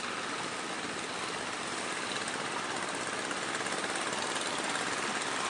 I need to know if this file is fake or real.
real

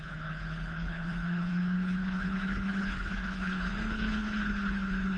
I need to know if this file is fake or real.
fake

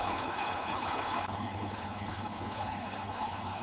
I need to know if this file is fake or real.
fake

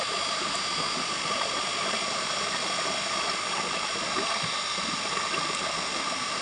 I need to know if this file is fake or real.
real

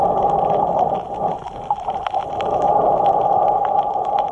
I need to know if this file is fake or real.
real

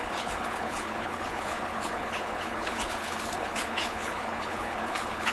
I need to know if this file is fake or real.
fake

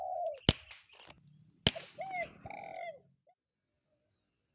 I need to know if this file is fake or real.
real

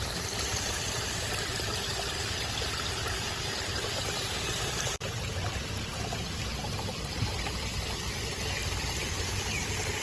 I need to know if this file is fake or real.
real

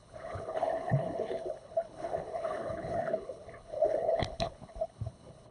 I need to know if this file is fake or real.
fake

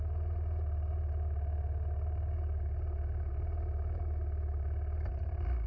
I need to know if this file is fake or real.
real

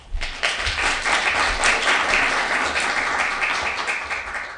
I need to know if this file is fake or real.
real